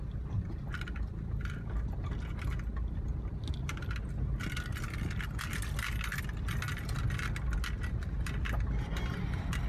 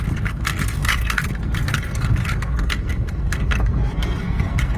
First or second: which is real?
first